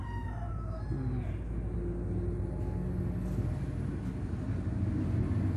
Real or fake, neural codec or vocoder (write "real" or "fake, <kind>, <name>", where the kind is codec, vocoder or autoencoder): real